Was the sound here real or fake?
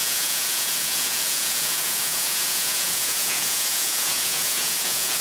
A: fake